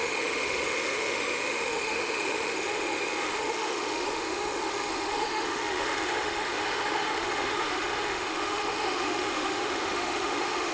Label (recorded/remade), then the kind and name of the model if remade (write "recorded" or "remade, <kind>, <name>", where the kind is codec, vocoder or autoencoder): remade, autoencoder, DAC-VAE